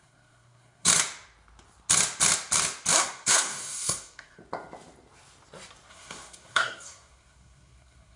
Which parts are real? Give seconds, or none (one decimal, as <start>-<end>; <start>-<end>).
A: 0.9-3.0; 4.4-5.9